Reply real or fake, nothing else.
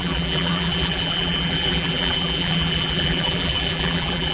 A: fake